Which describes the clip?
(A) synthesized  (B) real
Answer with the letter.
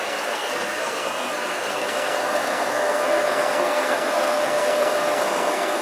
A